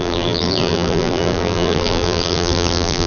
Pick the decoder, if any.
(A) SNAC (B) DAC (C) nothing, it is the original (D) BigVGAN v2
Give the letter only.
D